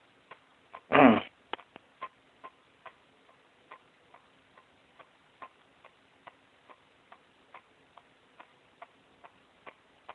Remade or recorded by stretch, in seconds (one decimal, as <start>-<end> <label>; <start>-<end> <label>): 0.0-10.1 recorded